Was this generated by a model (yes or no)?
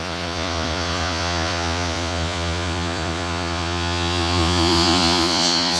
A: yes